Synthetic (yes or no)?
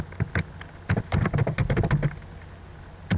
no